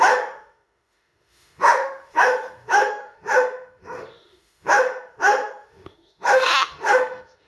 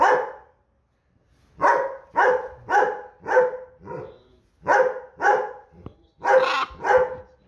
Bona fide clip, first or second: second